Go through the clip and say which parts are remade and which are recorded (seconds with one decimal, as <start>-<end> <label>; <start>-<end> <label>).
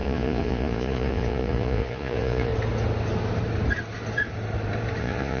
0.0-2.5 remade; 2.5-5.0 recorded; 5.0-5.4 remade